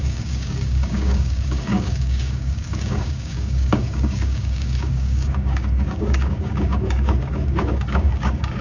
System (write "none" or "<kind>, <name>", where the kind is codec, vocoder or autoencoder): codec, DAC